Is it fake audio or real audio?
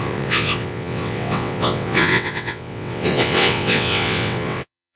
fake